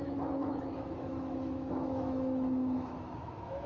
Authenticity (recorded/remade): remade